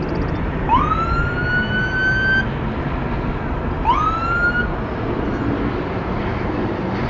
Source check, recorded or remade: recorded